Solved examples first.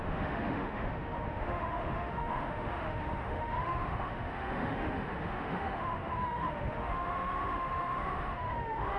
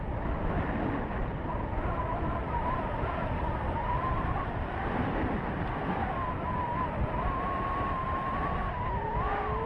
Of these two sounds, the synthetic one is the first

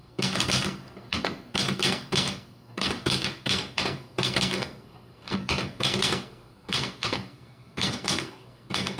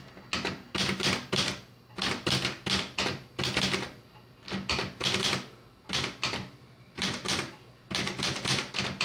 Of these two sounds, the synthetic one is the first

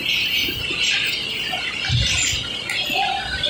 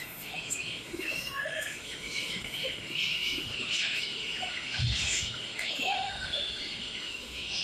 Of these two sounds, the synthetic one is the second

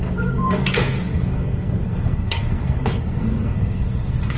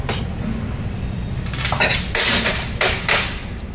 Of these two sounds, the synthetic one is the first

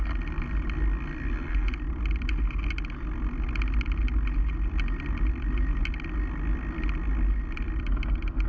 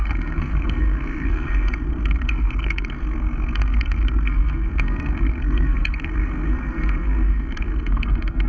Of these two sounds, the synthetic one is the second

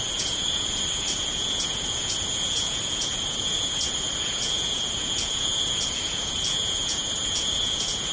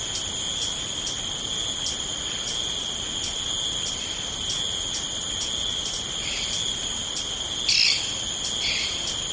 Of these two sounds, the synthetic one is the first